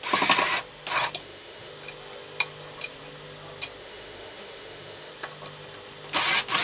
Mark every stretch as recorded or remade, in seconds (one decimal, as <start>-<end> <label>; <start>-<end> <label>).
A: 0.0-1.2 recorded; 1.2-1.7 remade; 1.7-3.8 recorded; 3.8-5.1 remade; 5.1-6.6 recorded